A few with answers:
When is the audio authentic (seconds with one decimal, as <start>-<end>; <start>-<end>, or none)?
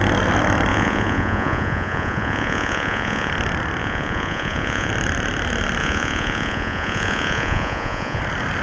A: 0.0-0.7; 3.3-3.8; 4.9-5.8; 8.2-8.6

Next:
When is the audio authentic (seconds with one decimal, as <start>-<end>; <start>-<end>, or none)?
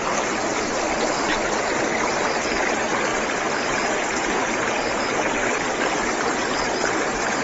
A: 0.0-7.4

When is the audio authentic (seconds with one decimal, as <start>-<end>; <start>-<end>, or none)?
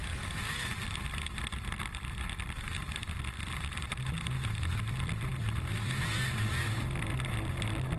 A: 3.9-8.0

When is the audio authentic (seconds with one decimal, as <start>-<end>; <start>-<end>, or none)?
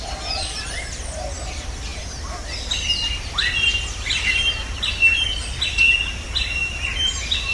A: 0.0-7.5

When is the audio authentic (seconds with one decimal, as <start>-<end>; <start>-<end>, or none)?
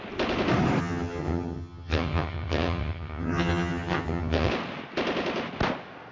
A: 0.0-0.8; 4.5-6.1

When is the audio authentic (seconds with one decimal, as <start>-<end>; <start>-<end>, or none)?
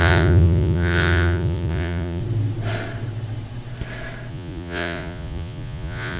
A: 2.2-4.3